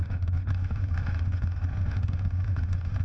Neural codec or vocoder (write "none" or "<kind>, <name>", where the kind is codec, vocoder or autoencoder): autoencoder, DAC-VAE